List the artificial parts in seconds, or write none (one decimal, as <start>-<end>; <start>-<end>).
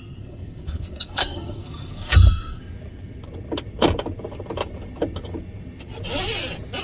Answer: 0.0-2.6